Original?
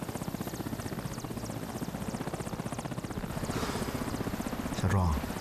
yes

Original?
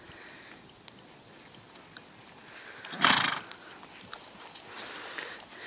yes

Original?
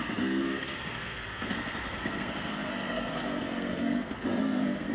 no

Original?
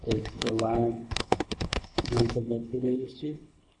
no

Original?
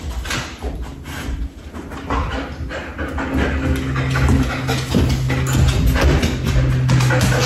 yes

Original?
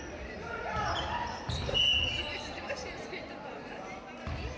no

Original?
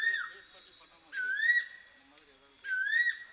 yes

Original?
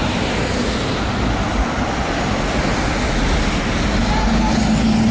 yes